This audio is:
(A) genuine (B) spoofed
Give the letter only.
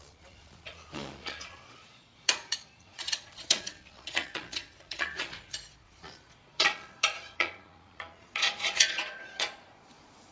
B